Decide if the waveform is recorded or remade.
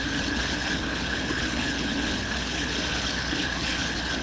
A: remade